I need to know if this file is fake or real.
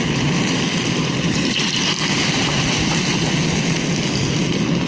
real